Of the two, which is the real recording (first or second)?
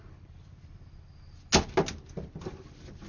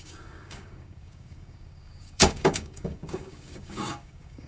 first